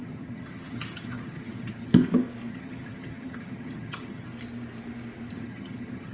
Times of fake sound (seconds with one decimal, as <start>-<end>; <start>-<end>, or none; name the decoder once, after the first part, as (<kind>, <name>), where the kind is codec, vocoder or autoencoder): 0.0-1.9 (vocoder, HiFi-GAN); 2.5-4.3; 5.3-6.1